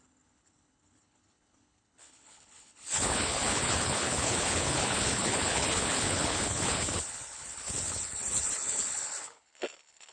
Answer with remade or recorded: remade